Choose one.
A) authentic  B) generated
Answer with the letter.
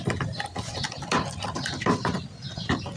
A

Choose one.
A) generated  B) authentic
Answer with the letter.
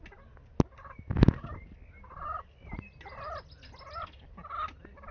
B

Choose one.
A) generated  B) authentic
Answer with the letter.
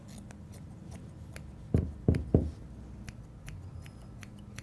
B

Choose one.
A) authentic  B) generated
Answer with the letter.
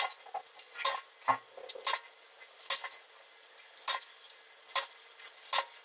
A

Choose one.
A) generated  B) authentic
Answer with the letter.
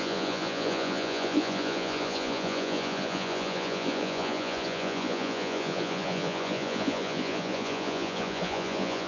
A